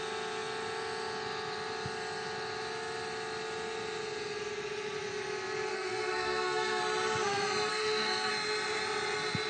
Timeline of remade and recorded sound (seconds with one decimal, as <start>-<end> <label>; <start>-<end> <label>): 0.0-5.7 recorded; 5.7-6.8 remade; 6.8-7.7 recorded; 7.7-8.3 remade; 8.3-9.5 recorded